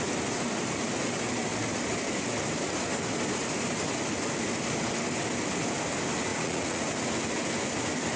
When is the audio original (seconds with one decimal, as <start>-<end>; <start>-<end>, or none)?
0.0-6.3; 6.9-8.2